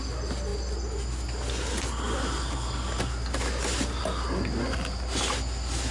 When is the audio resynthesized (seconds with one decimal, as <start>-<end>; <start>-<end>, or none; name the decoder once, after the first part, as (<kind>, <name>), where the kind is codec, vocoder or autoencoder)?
none